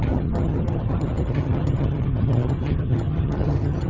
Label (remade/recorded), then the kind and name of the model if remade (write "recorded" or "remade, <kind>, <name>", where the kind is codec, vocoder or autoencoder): remade, vocoder, HiFi-GAN